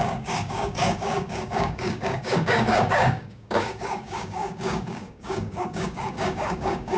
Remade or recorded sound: remade